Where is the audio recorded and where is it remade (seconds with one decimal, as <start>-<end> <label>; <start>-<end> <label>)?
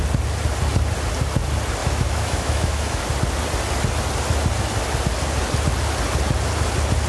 0.0-1.8 recorded; 1.8-3.0 remade; 3.0-7.1 recorded